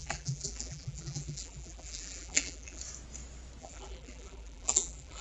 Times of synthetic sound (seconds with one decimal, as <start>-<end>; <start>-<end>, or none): 0.0-2.8; 3.6-5.2